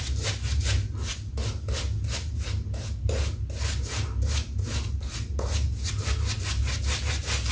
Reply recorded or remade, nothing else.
recorded